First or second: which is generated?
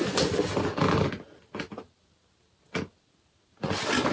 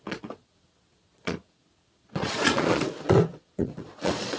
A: second